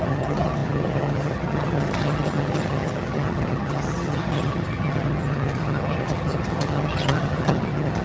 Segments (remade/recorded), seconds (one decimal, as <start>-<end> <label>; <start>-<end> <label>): 0.0-8.0 remade